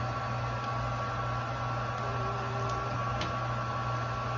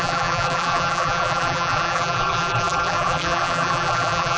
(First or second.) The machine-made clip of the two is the second